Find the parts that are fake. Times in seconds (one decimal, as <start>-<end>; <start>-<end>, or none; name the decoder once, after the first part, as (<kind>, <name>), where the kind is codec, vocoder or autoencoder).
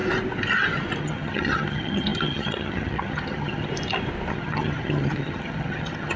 1.0-3.7 (vocoder, HiFi-GAN); 4.3-6.2